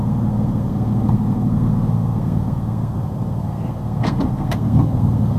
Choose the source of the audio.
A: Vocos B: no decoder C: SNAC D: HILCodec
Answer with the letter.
C